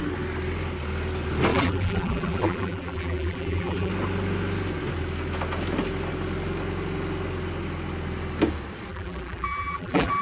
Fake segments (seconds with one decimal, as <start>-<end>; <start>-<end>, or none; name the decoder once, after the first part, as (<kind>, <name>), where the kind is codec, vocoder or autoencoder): 1.5-3.9 (vocoder, BigVGAN v2); 8.9-10.2